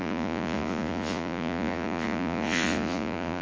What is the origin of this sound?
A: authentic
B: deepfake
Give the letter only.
B